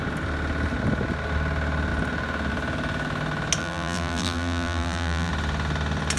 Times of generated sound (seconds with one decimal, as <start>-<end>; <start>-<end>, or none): 3.6-5.3